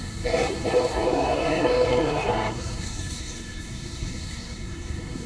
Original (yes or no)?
no